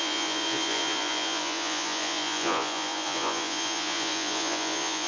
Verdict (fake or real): fake